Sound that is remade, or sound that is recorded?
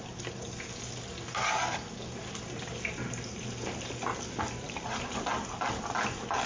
recorded